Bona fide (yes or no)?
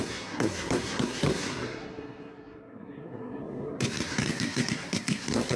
no